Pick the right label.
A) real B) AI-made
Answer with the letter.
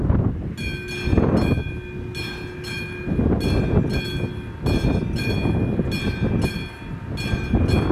A